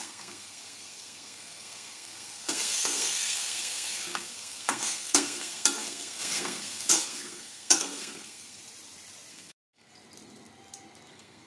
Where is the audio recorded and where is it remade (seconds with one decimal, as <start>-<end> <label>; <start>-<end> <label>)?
0.0-8.6 remade; 8.6-9.3 recorded; 9.3-9.9 remade; 9.9-11.1 recorded; 11.1-11.5 remade